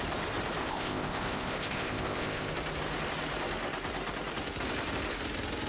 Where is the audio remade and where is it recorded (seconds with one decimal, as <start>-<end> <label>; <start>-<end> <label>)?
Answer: 0.0-0.6 recorded; 0.6-2.5 remade; 2.5-5.7 recorded